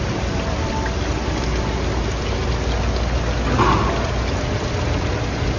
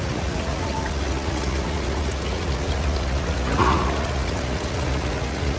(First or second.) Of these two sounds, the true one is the first